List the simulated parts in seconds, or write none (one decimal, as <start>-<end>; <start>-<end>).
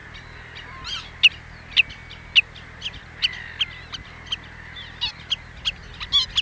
none